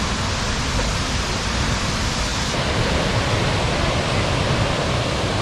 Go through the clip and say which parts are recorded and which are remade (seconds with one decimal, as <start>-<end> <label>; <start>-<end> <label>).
0.0-5.4 recorded